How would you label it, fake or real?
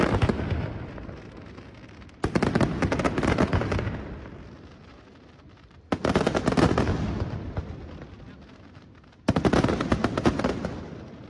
real